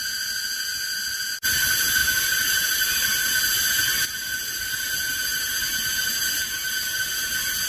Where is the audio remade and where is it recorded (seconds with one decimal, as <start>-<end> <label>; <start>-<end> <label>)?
0.0-7.7 recorded